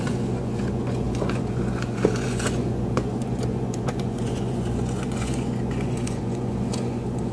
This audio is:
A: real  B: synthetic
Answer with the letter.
B